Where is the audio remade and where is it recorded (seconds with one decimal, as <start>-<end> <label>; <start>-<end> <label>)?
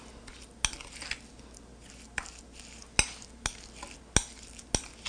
0.0-5.1 recorded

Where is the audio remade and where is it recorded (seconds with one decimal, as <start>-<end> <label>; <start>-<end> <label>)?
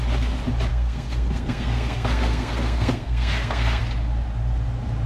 0.0-0.7 recorded; 0.7-3.8 remade; 3.8-5.1 recorded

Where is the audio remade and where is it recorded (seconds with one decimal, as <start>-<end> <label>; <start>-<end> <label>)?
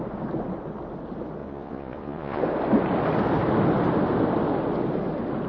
0.0-1.4 recorded; 1.4-2.4 remade; 2.4-5.5 recorded